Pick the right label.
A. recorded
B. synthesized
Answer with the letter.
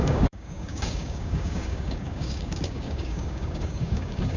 B